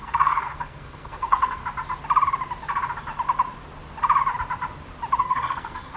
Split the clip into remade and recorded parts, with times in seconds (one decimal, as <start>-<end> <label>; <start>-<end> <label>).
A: 0.0-1.6 remade; 1.6-5.2 recorded; 5.2-6.0 remade

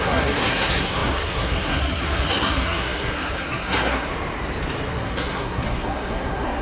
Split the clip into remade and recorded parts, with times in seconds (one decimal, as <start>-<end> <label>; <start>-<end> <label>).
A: 0.0-4.1 remade; 4.1-4.9 recorded; 4.9-6.6 remade

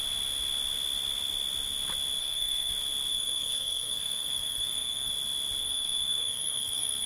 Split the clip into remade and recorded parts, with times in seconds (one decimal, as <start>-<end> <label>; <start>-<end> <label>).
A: 0.0-2.2 recorded; 2.2-2.7 remade; 2.7-3.1 recorded; 3.1-5.1 remade; 5.1-5.6 recorded; 5.6-7.1 remade